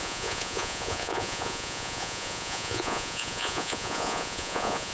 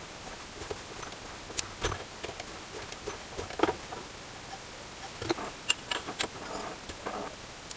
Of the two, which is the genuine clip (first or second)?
second